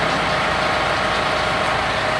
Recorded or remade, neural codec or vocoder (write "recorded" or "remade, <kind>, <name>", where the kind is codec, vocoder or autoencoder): recorded